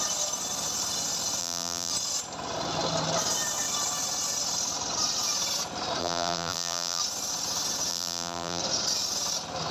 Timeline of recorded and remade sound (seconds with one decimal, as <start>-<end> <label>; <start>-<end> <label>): 0.0-1.4 recorded; 1.4-1.9 remade; 1.9-6.0 recorded; 6.0-7.0 remade; 7.0-7.9 recorded; 7.9-8.6 remade; 8.6-9.7 recorded